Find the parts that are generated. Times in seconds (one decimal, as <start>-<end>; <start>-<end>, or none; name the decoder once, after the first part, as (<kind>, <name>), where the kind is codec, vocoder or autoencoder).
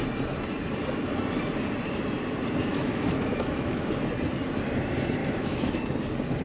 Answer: 2.7-3.9 (autoencoder, DAC-VAE); 5.2-5.8